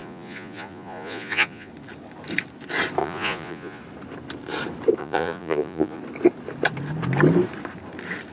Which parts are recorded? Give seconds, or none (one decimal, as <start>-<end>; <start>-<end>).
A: 1.7-3.0; 3.8-5.0; 6.0-8.3